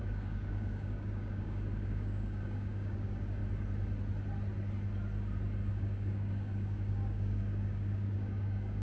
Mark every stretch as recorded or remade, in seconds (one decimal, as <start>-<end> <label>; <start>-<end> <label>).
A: 0.0-3.4 remade; 3.4-5.7 recorded; 5.7-8.8 remade